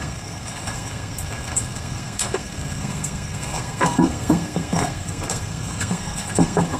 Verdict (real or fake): fake